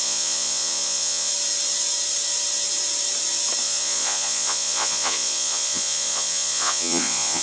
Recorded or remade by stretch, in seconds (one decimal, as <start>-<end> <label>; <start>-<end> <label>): 0.0-1.3 remade; 1.3-3.6 recorded; 3.6-7.4 remade